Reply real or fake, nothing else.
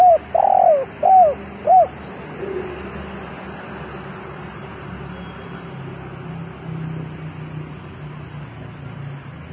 real